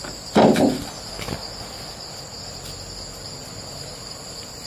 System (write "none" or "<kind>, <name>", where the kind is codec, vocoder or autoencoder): none